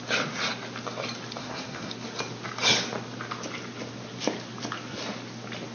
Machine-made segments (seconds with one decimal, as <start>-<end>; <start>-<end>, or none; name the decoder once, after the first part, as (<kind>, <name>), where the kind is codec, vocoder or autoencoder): 1.4-1.9 (codec, SNAC)